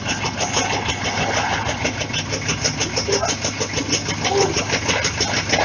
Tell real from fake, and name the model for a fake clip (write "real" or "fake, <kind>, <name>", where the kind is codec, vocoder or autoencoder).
real